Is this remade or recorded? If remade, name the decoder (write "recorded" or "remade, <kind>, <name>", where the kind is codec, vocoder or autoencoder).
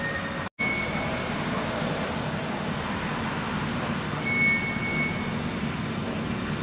recorded